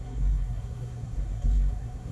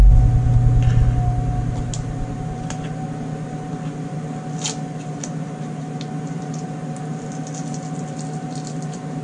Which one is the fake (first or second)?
first